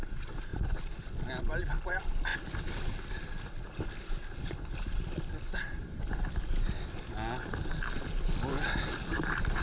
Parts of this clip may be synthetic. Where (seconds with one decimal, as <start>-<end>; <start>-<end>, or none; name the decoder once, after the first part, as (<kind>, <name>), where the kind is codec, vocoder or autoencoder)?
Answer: none